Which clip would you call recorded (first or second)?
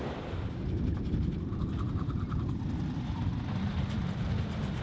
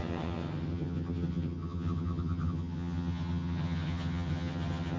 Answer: first